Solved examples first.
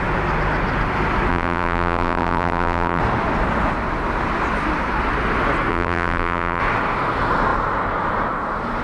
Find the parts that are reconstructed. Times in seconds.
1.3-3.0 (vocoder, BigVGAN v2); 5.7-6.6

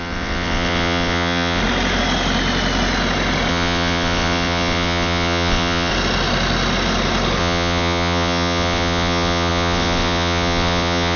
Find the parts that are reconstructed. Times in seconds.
0.0-1.6 (vocoder, WaveNeXt); 3.5-5.9; 7.4-11.2